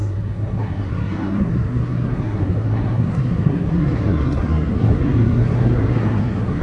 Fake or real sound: fake